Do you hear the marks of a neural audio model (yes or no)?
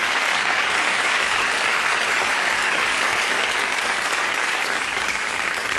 yes